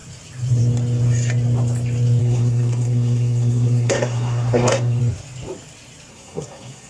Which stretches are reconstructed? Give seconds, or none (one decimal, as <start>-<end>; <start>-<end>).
2.2-5.0; 6.1-6.9